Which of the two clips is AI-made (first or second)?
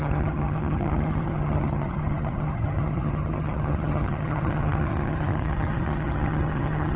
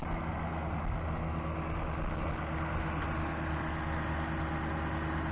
first